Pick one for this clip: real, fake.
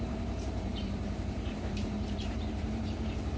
fake